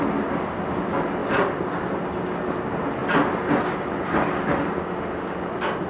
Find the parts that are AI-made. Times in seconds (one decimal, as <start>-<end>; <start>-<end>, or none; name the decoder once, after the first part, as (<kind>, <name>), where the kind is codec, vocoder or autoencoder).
none